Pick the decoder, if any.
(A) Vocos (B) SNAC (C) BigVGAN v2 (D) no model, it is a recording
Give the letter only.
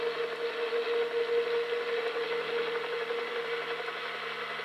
D